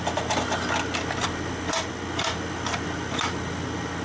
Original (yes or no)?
yes